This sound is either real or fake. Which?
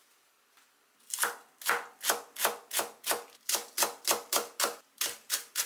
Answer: real